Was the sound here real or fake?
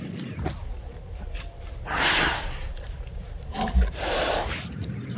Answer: real